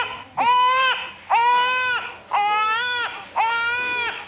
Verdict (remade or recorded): recorded